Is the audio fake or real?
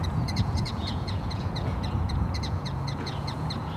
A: fake